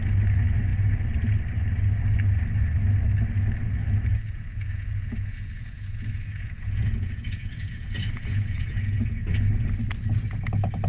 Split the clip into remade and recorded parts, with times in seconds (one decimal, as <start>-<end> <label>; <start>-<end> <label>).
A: 0.0-4.1 recorded; 4.1-9.3 remade; 9.3-10.9 recorded